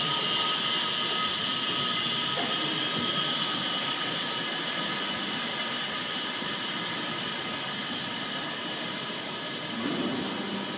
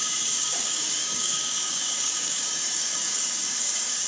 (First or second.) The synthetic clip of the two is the second